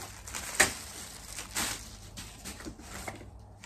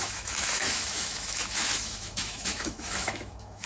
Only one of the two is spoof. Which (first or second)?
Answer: second